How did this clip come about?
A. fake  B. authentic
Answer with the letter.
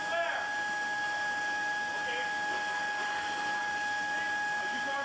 B